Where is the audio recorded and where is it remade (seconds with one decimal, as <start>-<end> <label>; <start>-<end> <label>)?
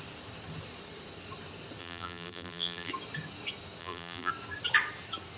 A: 0.0-1.8 recorded; 1.8-2.9 remade; 2.9-3.8 recorded; 3.8-4.3 remade; 4.3-5.4 recorded